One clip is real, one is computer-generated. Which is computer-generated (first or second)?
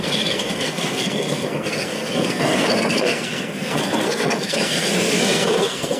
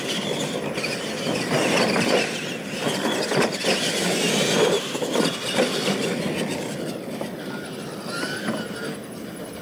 first